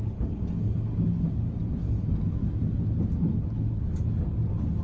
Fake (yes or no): no